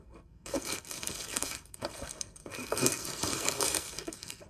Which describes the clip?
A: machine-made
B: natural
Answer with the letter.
A